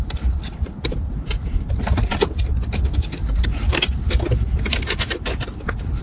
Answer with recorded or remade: remade